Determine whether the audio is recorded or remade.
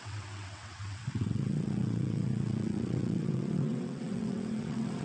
remade